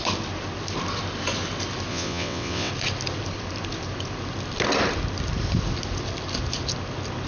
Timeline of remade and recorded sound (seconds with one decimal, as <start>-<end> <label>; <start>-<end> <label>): 0.0-1.9 recorded; 1.9-2.7 remade; 2.7-7.3 recorded